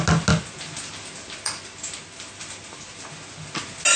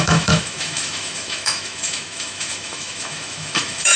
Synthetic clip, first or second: second